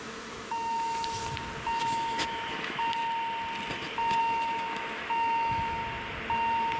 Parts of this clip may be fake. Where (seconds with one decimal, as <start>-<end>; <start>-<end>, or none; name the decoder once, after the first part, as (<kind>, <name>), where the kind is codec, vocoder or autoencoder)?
0.0-1.2 (autoencoder, DAC-VAE); 1.8-3.0; 4.2-5.8